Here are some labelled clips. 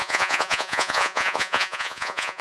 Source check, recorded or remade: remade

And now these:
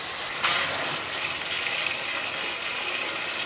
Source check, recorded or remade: recorded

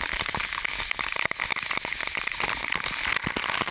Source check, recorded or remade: recorded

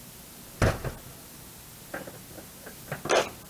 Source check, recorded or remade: recorded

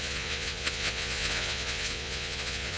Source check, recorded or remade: remade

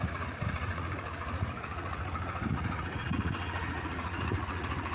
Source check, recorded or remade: remade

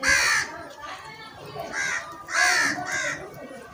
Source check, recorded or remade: recorded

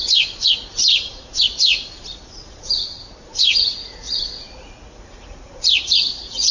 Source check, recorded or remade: remade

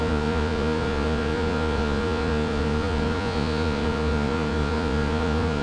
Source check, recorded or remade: remade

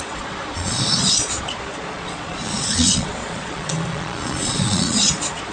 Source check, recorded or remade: remade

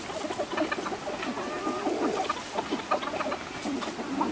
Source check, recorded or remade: recorded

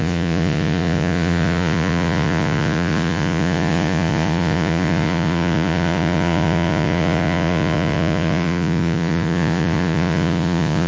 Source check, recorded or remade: remade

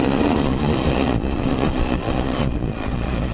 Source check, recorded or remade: remade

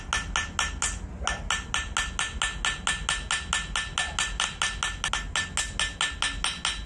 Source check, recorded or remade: recorded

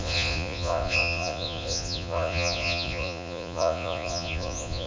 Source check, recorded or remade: remade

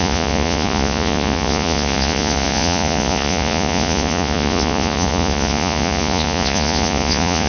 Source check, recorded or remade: remade